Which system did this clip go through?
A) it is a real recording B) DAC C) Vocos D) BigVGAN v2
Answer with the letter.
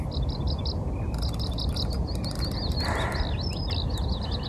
A